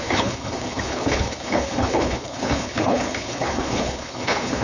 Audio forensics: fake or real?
fake